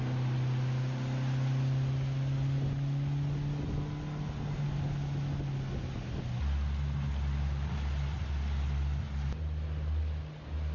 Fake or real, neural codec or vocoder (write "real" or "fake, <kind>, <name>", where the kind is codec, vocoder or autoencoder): real